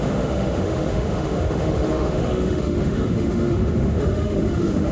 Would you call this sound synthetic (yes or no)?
yes